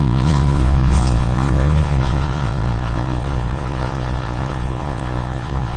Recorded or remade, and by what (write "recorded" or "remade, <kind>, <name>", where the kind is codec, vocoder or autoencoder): remade, vocoder, Vocos